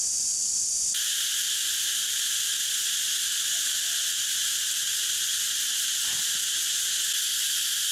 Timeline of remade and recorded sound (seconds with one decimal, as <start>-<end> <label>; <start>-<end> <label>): 0.0-5.3 remade; 5.3-7.3 recorded; 7.3-7.9 remade